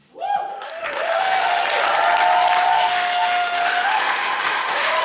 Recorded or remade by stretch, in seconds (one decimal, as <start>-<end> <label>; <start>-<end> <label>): 0.0-0.5 recorded; 0.5-1.6 remade; 1.6-2.7 recorded; 2.7-5.0 remade